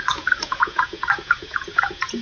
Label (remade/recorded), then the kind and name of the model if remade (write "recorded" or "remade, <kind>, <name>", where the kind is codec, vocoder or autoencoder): remade, vocoder, Vocos